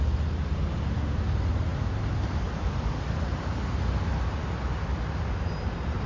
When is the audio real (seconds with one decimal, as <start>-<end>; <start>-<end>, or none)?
0.0-6.1

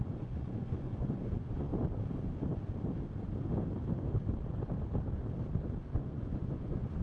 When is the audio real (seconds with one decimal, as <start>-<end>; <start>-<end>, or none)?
1.7-5.9